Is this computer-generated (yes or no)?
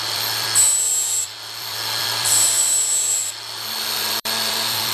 yes